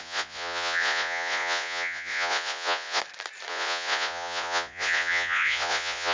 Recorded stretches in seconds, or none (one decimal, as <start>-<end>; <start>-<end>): 3.0-3.5